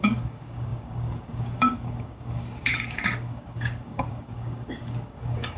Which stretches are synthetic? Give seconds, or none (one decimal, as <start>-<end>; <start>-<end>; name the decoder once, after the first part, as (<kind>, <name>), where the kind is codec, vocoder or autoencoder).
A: 0.0-5.6 (codec, DAC)